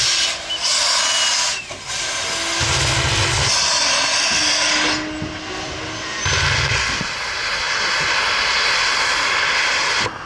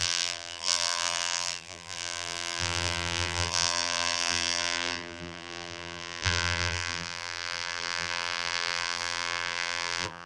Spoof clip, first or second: second